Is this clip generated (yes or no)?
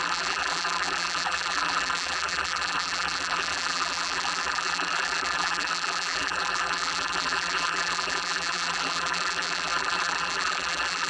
yes